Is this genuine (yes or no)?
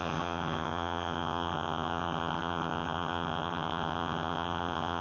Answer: no